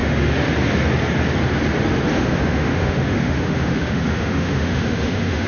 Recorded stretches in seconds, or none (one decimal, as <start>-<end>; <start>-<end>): 0.5-2.1